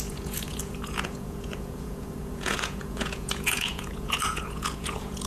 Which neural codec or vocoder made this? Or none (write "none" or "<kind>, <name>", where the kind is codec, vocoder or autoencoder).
vocoder, Vocos